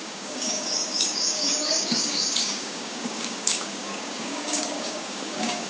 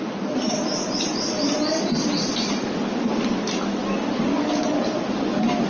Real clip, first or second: second